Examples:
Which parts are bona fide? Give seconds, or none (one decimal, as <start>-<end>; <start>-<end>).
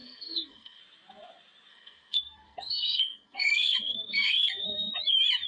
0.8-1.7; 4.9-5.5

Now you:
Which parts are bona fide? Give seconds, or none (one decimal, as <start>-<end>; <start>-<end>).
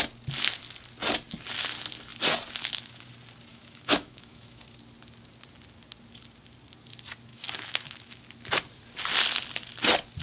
0.0-3.5; 4.6-7.3; 8.2-10.2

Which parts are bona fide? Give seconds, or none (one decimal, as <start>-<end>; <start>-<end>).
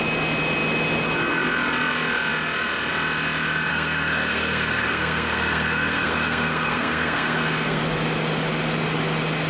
0.0-3.7; 7.8-9.5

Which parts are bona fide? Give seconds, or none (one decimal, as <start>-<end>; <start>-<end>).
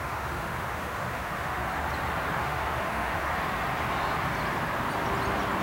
1.6-2.3; 3.3-5.6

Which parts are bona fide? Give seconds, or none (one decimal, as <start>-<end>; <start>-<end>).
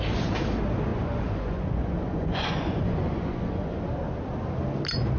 0.0-0.9; 3.8-5.2